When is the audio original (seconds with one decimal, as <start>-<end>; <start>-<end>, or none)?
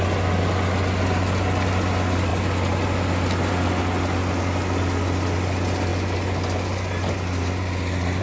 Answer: 0.0-8.2